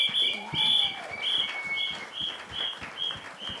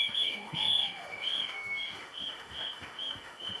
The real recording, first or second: first